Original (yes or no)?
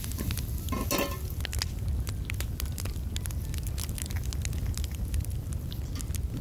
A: yes